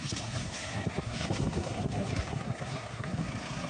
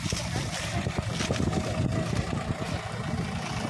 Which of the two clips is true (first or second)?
second